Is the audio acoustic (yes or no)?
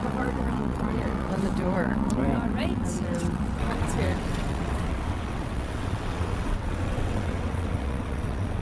no